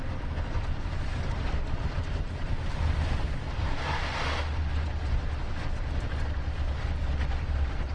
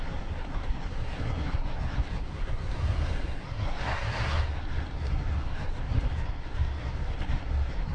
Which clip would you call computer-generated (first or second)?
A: second